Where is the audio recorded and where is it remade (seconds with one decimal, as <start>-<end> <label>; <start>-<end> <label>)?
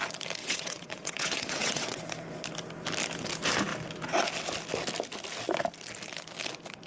0.0-0.4 recorded; 0.4-2.0 remade; 2.0-6.9 recorded